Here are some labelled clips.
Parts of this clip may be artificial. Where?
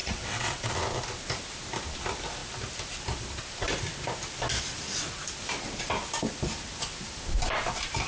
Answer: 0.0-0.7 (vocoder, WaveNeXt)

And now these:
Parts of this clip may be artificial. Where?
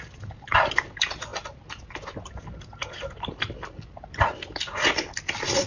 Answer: none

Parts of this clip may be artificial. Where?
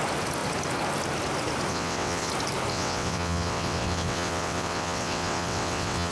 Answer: 1.7-2.3 (vocoder, WaveNeXt); 2.7-6.1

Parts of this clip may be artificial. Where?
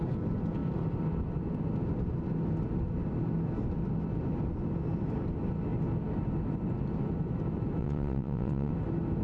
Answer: 7.8-8.7 (vocoder, WaveNeXt)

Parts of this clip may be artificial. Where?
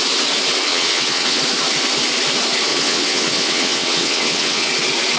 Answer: 0.7-1.4 (vocoder, WaveNeXt); 2.7-4.7